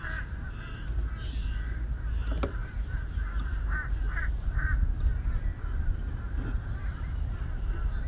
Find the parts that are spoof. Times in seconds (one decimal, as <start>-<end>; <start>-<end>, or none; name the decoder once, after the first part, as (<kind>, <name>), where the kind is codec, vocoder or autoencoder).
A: 2.6-4.3 (vocoder, BigVGAN v2); 5.5-8.1